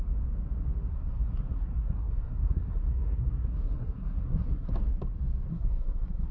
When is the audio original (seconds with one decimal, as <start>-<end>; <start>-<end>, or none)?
0.0-0.9; 4.7-5.5